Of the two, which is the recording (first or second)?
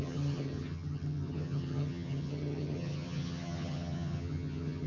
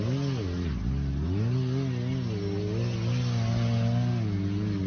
second